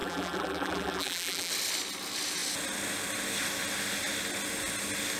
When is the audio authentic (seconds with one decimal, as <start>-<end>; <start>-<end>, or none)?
1.5-5.2